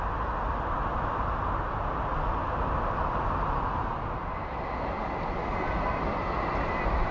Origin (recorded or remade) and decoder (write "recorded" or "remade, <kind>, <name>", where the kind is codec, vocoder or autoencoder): recorded